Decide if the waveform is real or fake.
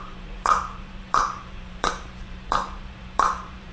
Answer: fake